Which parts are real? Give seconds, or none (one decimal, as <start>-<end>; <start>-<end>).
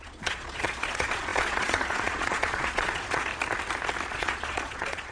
3.3-4.1